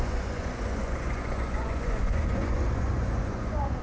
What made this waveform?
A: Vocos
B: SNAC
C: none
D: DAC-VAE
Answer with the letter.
A